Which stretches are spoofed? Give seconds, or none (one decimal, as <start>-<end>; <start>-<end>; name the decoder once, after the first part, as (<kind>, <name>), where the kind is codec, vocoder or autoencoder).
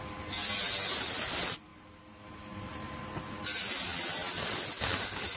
none